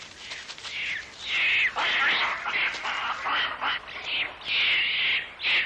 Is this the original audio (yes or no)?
yes